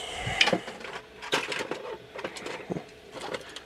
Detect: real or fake fake